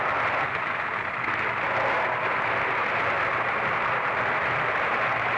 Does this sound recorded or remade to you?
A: recorded